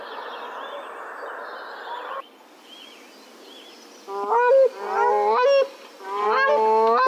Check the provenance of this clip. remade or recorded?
recorded